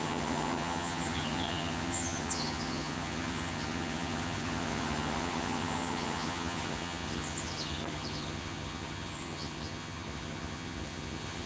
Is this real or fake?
fake